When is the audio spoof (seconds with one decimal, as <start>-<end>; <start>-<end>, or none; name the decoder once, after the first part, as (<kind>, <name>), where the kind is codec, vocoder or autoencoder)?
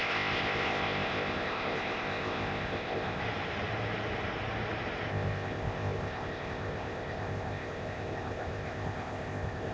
0.0-3.2 (codec, ZipCodec); 5.1-9.7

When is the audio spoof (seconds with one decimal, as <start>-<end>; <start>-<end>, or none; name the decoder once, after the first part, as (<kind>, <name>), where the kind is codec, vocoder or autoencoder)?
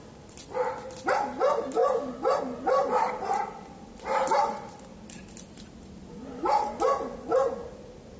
none